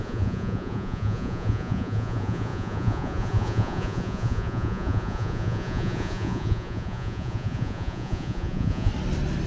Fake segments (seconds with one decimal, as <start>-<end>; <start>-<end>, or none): 0.0-8.9